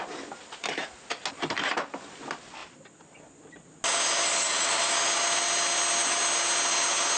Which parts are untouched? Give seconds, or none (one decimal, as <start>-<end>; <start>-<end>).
0.0-7.2